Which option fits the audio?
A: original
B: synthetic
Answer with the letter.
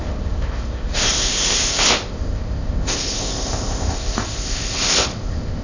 B